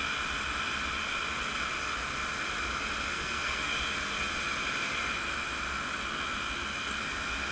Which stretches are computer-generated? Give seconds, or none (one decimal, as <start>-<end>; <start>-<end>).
3.1-3.7